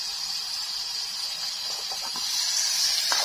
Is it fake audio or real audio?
real